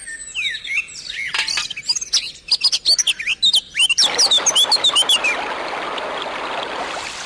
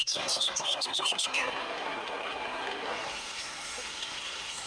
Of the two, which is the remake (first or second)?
second